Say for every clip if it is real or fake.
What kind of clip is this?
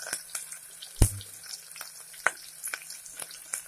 real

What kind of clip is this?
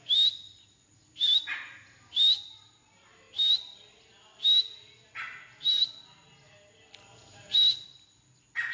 real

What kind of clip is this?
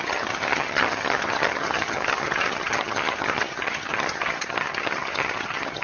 fake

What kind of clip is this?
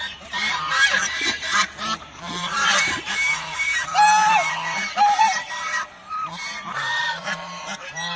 fake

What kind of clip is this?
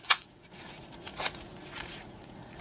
fake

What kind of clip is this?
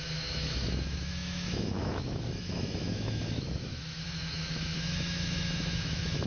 fake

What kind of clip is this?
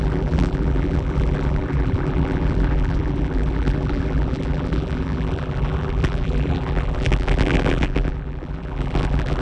fake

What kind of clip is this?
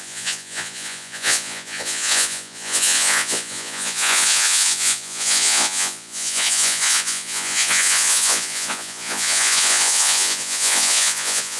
fake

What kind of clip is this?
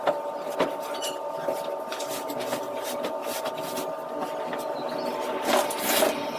real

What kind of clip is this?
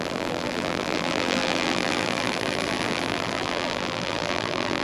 fake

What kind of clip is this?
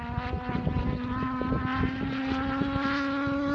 real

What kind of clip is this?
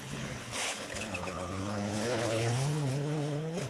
fake